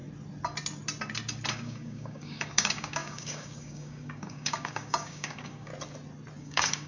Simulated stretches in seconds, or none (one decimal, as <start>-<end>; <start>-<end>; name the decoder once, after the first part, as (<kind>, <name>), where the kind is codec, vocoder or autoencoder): 1.5-5.7 (codec, DAC); 6.4-6.9

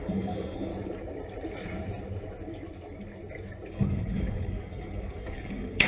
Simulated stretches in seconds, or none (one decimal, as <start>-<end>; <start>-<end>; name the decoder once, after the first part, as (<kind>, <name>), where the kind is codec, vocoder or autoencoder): 0.0-0.7 (codec, DAC); 3.7-5.9